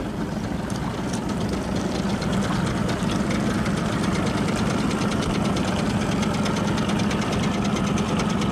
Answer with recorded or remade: recorded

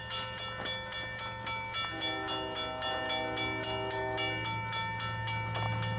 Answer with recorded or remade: recorded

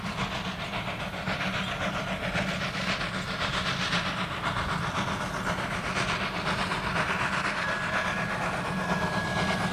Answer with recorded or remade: recorded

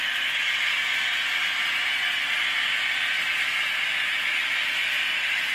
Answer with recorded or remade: recorded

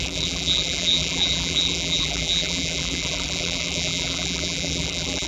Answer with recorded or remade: remade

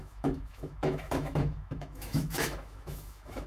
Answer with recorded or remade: remade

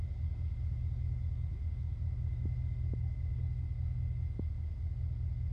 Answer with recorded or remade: recorded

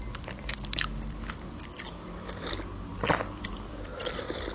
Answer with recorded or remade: remade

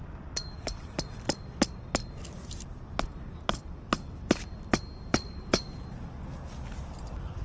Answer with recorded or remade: recorded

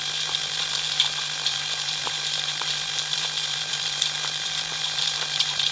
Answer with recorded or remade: remade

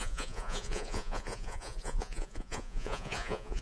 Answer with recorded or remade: remade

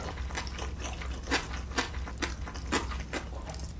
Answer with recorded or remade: recorded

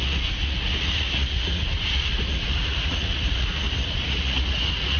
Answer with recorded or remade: remade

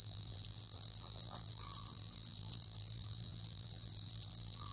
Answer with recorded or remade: remade